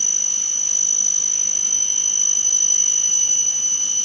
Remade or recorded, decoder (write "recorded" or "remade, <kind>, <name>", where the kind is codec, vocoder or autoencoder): recorded